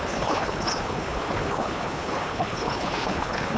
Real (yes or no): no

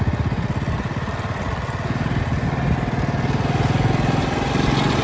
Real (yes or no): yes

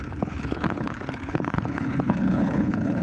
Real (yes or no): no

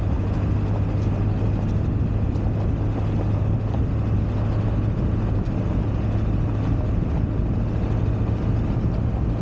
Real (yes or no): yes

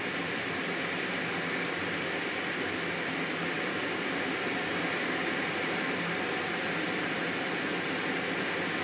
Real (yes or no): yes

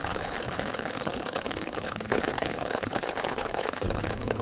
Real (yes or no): no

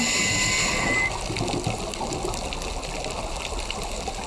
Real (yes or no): yes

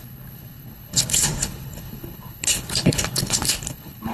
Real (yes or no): no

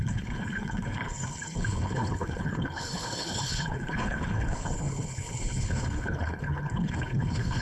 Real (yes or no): no